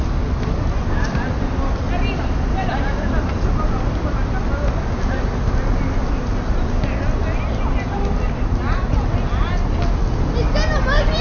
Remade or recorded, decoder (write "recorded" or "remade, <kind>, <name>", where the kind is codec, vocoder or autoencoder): recorded